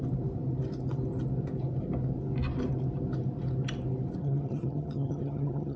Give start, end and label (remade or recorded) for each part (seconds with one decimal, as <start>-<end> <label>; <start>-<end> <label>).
0.0-4.2 recorded; 4.2-5.8 remade

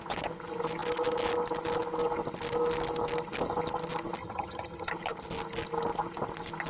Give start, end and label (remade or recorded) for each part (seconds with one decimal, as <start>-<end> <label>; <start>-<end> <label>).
0.0-4.2 recorded; 4.2-4.9 remade; 4.9-6.7 recorded

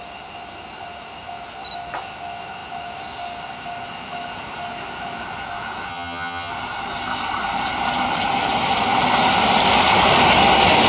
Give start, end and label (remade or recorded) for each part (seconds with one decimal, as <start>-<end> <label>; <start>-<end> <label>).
0.0-5.9 recorded; 5.9-6.5 remade; 6.5-10.9 recorded